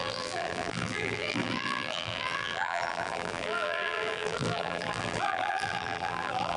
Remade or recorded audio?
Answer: remade